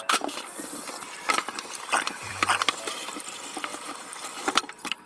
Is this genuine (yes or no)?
no